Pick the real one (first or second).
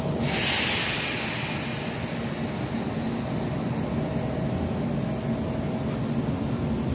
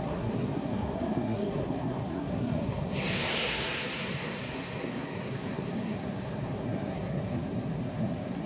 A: first